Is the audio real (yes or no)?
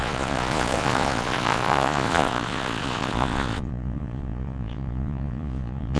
no